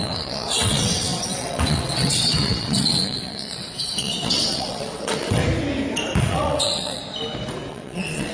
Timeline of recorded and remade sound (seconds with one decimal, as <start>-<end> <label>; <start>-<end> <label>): 0.0-5.4 remade; 5.4-6.2 recorded; 6.2-7.0 remade; 7.0-7.7 recorded; 7.7-8.3 remade